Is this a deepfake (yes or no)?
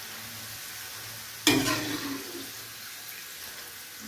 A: no